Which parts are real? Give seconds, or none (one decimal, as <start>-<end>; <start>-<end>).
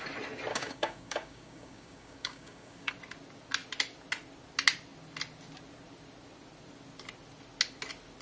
0.0-0.5; 2.9-8.2